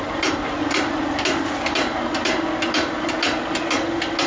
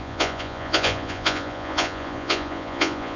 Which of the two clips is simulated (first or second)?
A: second